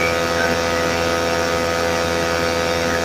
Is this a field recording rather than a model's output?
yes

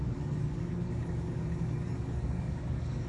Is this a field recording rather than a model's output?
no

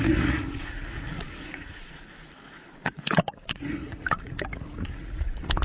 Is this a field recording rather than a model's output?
no